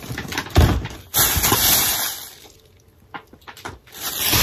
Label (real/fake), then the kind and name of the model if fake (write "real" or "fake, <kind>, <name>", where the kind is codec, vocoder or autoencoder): real